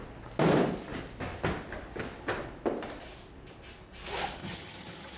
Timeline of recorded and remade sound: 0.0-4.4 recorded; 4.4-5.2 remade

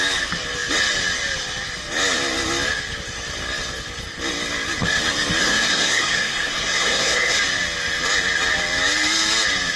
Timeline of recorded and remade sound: 0.0-5.4 recorded; 5.4-7.4 remade; 7.4-9.8 recorded

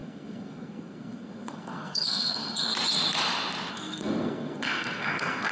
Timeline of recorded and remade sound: 0.0-2.7 remade; 2.7-3.7 recorded; 3.7-5.5 remade

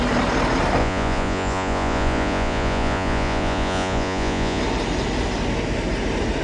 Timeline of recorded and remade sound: 0.0-0.8 recorded; 0.8-4.6 remade; 4.6-6.4 recorded

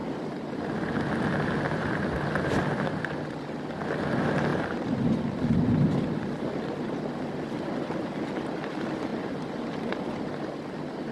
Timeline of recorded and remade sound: 0.0-3.4 remade; 3.4-4.5 recorded; 4.5-7.0 remade; 7.0-11.1 recorded

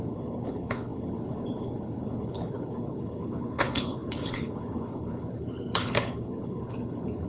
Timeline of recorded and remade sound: 0.0-7.3 remade